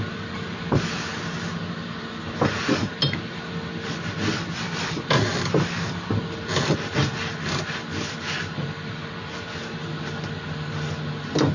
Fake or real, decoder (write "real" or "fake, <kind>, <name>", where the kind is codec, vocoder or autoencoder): real